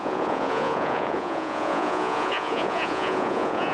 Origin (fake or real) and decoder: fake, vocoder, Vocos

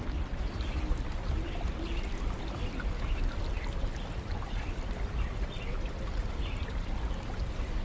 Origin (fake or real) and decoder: real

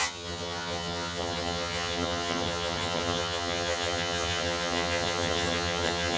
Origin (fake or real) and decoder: fake, vocoder, HiFi-GAN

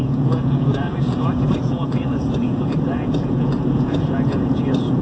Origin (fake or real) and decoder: fake, vocoder, Vocos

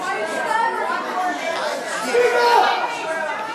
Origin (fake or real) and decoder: real